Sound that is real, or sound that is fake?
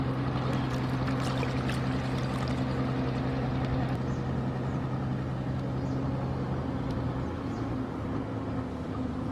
real